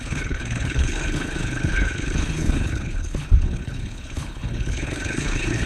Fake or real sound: fake